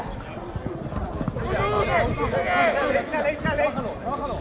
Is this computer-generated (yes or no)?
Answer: no